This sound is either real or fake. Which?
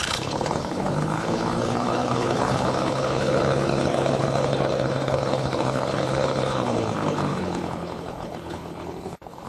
fake